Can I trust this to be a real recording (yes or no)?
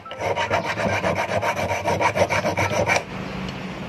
yes